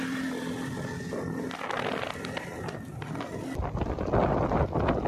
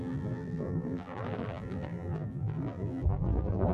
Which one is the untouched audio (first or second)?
first